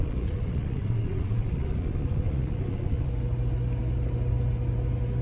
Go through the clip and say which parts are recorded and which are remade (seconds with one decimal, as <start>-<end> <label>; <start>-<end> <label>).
0.0-3.1 remade; 3.1-5.2 recorded